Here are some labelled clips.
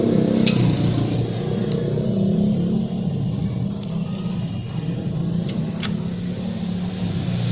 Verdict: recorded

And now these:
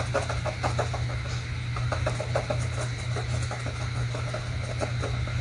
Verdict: recorded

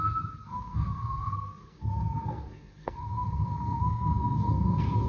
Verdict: remade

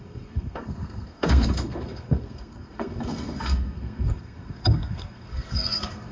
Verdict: remade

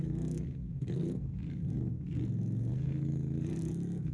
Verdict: remade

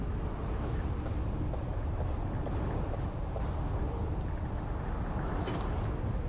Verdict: recorded